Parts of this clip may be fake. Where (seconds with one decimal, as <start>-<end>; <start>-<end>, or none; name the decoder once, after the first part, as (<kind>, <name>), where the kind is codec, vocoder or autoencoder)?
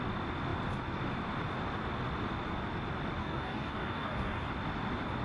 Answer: 3.2-4.5 (codec, DAC)